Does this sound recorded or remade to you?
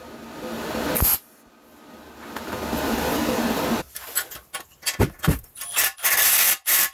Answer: recorded